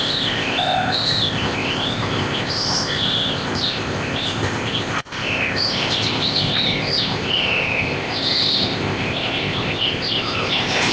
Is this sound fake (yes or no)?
yes